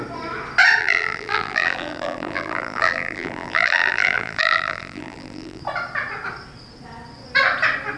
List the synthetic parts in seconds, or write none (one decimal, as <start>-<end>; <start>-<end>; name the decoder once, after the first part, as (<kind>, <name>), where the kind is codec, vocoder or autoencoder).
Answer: 0.8-5.6 (vocoder, BigVGAN v2)